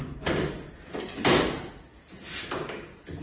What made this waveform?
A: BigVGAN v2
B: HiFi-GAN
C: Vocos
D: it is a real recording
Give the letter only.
A